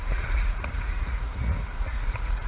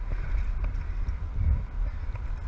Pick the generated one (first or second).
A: first